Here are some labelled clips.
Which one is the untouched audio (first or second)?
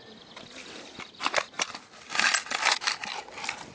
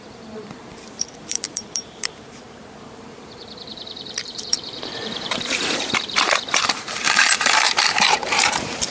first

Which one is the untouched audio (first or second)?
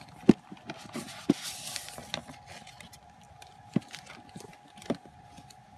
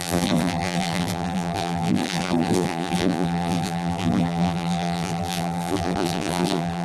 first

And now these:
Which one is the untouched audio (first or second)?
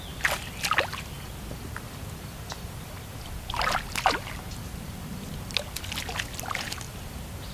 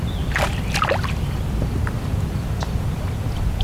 first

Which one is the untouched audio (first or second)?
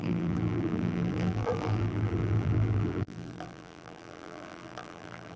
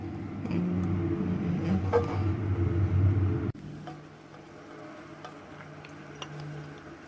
second